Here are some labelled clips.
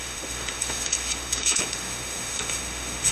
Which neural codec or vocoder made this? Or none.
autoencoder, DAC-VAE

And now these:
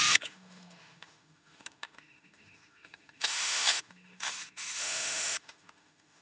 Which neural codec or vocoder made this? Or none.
autoencoder, DAC-VAE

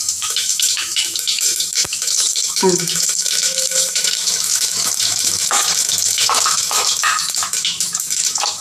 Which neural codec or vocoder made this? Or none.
autoencoder, DAC-VAE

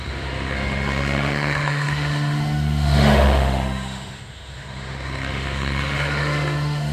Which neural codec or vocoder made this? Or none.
autoencoder, DAC-VAE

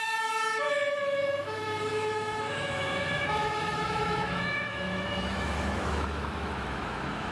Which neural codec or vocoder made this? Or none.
autoencoder, DAC-VAE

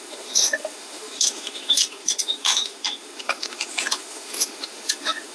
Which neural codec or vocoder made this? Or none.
autoencoder, DAC-VAE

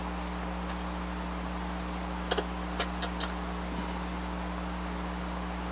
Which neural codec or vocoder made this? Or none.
none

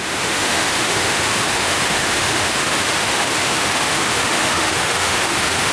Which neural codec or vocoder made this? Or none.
autoencoder, DAC-VAE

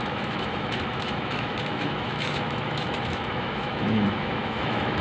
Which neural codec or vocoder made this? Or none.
autoencoder, DAC-VAE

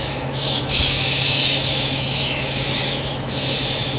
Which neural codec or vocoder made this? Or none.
autoencoder, DAC-VAE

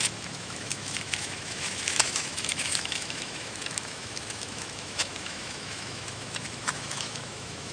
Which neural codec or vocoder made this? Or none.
autoencoder, DAC-VAE